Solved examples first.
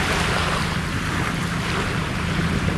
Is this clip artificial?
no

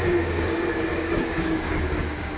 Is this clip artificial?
yes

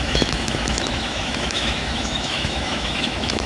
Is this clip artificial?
yes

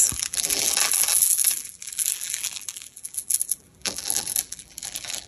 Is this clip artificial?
yes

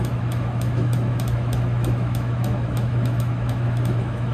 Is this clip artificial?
yes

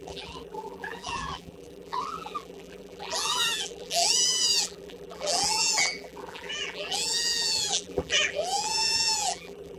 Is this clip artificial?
yes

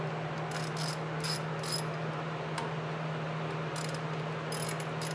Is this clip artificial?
no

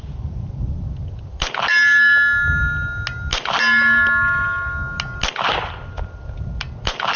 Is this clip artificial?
no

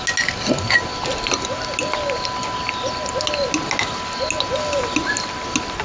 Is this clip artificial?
no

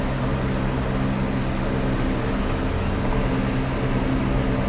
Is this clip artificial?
no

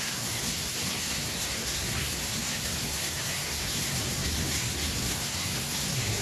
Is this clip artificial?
yes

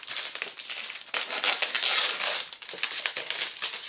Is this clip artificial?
no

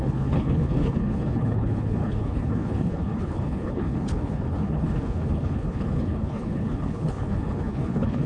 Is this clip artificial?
yes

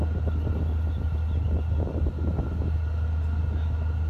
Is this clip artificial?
no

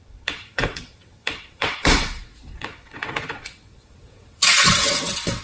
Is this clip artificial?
yes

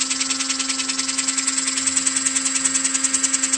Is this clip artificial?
no